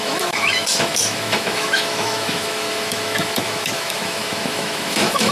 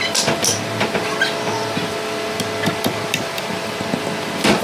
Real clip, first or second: second